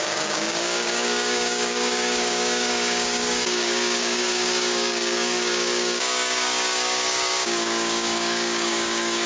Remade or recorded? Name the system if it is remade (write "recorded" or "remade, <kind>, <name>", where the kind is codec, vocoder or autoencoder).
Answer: remade, codec, DAC